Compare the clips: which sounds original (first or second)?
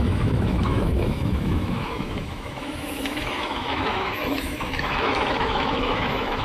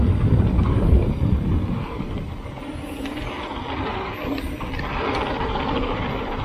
second